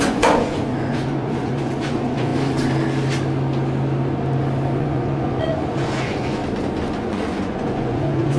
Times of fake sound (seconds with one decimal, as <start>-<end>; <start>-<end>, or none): 0.0-2.3; 4.8-6.4; 7.0-8.4